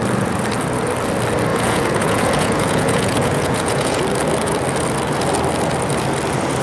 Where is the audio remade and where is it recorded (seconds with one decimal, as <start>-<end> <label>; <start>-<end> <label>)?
0.0-1.5 recorded; 1.5-4.0 remade; 4.0-6.6 recorded